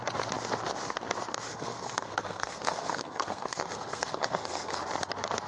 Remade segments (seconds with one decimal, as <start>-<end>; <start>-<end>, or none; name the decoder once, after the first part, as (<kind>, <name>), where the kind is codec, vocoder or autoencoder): 1.5-4.8 (codec, SNAC)